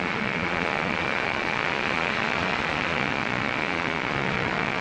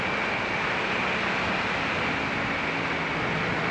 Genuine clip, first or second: second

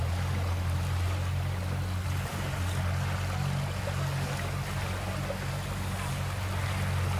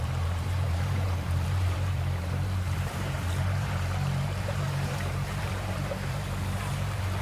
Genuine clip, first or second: first